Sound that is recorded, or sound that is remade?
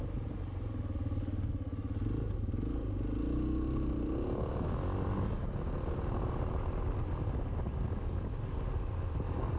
recorded